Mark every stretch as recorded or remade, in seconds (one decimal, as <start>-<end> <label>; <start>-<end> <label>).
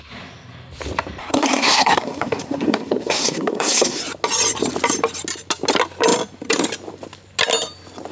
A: 0.0-1.2 recorded; 1.2-4.0 remade; 4.0-8.1 recorded